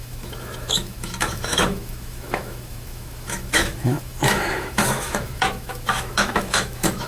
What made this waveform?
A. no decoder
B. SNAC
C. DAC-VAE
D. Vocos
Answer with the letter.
C